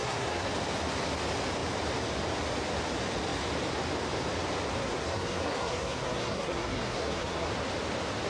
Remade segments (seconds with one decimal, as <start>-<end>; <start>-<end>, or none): 0.0-0.5; 4.8-7.5